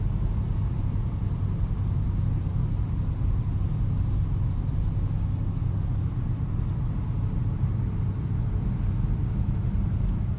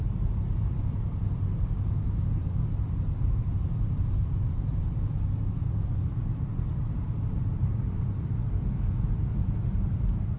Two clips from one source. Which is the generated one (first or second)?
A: second